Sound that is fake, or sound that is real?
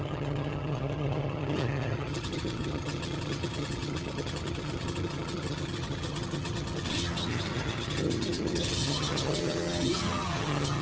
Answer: fake